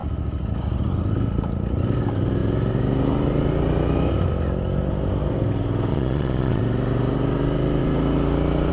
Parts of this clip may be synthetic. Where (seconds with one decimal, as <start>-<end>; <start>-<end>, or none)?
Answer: 5.9-6.6